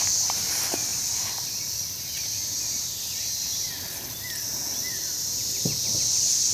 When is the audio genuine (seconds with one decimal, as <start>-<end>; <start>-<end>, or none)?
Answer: 0.0-6.5